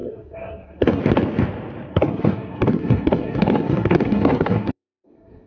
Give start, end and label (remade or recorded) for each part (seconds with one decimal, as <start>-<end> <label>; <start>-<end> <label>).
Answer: 0.0-1.0 remade; 1.0-1.9 recorded; 1.9-5.5 remade